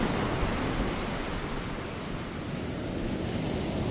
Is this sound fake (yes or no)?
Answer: no